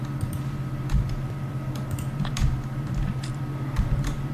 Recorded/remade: remade